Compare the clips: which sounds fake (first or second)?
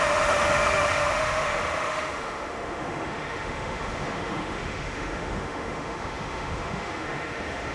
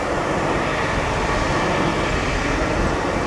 first